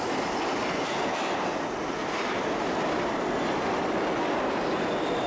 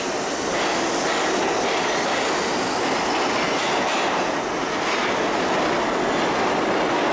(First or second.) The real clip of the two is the second